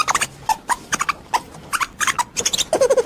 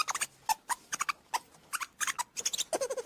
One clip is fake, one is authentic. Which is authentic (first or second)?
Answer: second